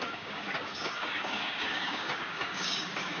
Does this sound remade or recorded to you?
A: remade